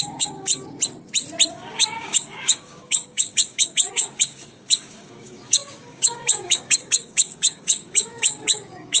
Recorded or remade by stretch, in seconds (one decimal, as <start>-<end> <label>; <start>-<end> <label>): 0.0-0.5 remade; 0.5-1.5 recorded; 1.5-9.0 remade